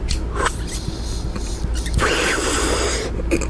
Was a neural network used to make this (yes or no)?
no